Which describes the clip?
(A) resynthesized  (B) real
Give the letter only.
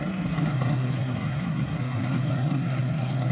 A